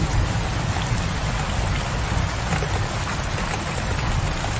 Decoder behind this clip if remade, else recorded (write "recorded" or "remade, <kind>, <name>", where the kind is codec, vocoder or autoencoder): recorded